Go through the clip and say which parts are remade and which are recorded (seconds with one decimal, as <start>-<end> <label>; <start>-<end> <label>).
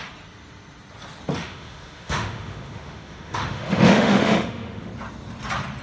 0.0-1.4 recorded; 1.4-4.9 remade; 4.9-5.8 recorded